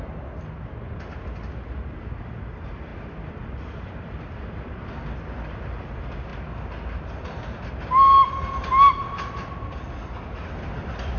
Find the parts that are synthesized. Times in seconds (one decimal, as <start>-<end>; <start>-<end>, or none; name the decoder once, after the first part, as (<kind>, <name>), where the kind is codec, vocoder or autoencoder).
none